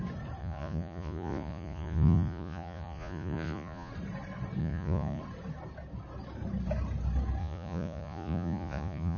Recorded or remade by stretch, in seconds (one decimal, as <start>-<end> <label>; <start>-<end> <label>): 0.0-0.4 recorded; 0.4-3.9 remade; 3.9-4.6 recorded; 4.6-5.2 remade; 5.2-7.4 recorded; 7.4-9.2 remade

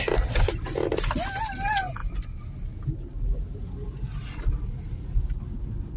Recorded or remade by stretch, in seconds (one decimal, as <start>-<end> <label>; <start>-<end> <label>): 0.0-6.0 recorded